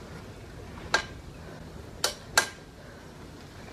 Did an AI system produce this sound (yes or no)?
no